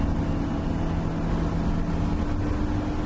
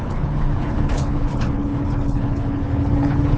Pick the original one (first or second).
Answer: first